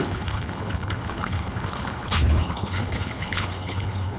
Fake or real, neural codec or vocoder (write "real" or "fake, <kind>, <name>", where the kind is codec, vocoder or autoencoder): fake, codec, HILCodec